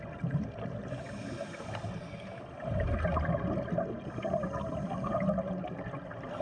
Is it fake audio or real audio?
real